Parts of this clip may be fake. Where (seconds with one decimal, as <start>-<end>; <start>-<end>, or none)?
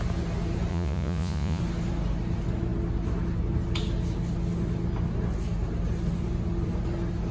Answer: 0.7-1.6